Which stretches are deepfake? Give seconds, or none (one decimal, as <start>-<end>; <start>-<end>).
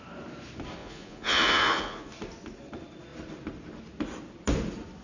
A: 0.8-2.1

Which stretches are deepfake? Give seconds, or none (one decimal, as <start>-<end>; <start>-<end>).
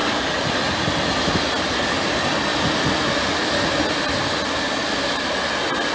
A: none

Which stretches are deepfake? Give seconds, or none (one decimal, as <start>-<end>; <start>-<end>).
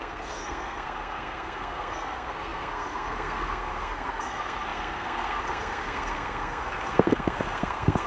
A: 0.0-8.1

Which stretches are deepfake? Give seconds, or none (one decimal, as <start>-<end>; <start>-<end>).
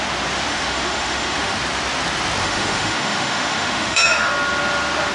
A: 0.5-1.6; 2.4-4.3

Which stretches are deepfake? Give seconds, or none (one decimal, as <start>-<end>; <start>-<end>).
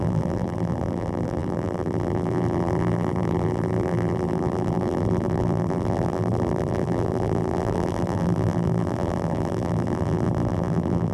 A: 0.0-11.1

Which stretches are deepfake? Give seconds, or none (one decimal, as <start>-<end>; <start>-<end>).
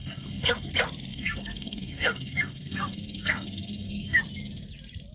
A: 0.0-0.7; 1.1-4.2